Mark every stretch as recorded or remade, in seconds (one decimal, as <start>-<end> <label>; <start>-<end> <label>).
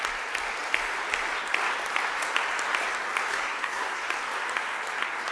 0.0-3.3 recorded; 3.3-4.0 remade; 4.0-5.3 recorded